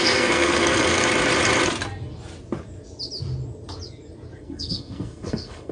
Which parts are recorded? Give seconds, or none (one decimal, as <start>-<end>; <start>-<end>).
1.0-4.4